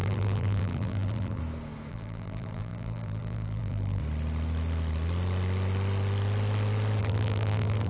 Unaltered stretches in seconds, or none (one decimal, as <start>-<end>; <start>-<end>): 1.4-1.9; 4.0-7.0